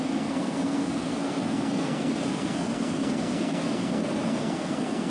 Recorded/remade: remade